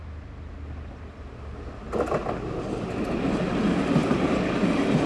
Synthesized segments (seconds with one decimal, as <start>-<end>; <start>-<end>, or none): none